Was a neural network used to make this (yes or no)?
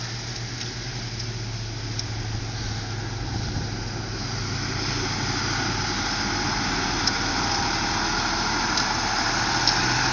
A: no